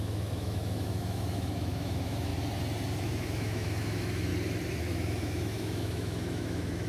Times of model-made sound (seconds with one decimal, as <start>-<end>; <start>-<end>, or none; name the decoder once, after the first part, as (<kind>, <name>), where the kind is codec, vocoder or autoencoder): 0.0-2.3 (autoencoder, DAC-VAE); 3.0-4.3; 4.8-6.9